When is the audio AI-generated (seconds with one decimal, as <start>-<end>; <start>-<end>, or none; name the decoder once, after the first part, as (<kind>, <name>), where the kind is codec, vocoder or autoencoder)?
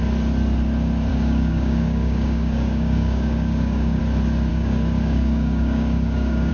1.1-4.0 (codec, DAC); 4.5-6.5